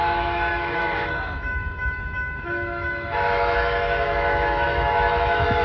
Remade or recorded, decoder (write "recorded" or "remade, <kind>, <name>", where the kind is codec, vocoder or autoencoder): remade, autoencoder, DAC-VAE